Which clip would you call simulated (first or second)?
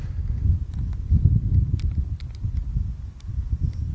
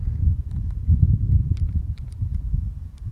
second